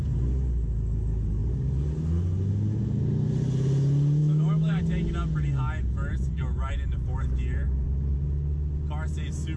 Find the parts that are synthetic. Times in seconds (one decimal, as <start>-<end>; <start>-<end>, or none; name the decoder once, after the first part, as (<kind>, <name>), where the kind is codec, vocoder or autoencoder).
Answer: 4.2-4.8 (autoencoder, DAC-VAE)